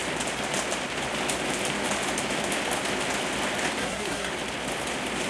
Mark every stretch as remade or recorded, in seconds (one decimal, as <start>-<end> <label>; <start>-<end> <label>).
0.0-3.8 recorded; 3.8-4.3 remade; 4.3-5.3 recorded